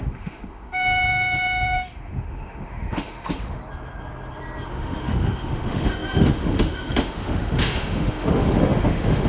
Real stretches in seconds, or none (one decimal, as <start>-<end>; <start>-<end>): 3.6-4.7